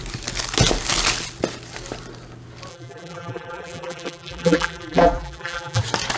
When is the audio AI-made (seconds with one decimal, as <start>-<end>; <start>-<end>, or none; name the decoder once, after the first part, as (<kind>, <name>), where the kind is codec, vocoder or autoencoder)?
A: 2.7-5.8 (vocoder, BigVGAN v2)